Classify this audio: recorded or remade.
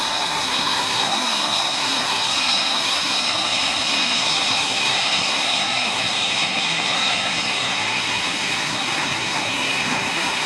remade